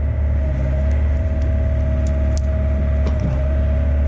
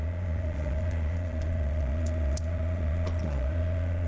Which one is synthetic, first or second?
second